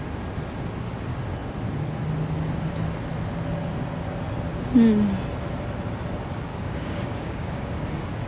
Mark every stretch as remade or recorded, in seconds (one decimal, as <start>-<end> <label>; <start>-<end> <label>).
0.0-6.5 recorded; 6.5-8.3 remade